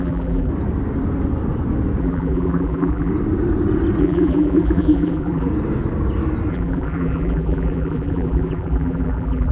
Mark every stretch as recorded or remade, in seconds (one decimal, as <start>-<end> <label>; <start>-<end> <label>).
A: 0.0-0.5 remade; 0.5-2.0 recorded; 2.0-3.1 remade; 3.1-4.0 recorded; 4.0-5.5 remade; 5.5-6.5 recorded; 6.5-9.5 remade